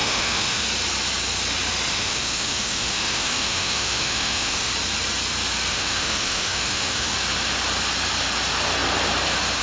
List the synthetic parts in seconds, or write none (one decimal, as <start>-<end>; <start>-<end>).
0.0-0.6; 1.9-4.7; 5.7-7.1